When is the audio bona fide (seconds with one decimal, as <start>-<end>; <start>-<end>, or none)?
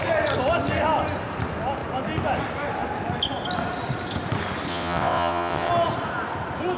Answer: 0.0-4.7; 5.7-6.8